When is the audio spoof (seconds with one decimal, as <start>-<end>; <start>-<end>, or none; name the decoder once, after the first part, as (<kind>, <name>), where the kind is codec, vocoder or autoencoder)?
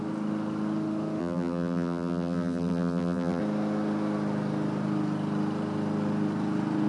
1.2-3.4 (vocoder, BigVGAN v2)